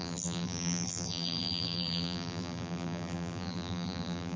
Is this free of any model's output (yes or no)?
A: no